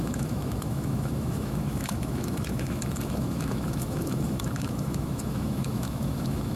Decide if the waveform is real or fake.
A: fake